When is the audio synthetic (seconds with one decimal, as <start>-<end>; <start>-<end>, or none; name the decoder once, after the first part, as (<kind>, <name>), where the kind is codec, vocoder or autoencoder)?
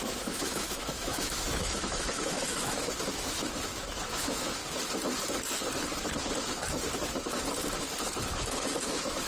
0.0-4.6 (autoencoder, DAC-VAE); 8.4-9.3